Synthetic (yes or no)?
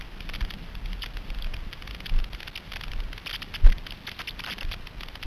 no